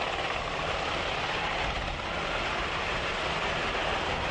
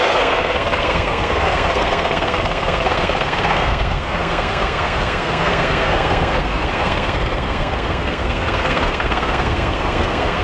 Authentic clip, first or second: first